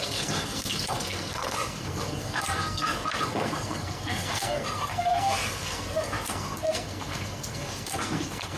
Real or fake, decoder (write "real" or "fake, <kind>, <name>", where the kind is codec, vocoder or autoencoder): fake, codec, SNAC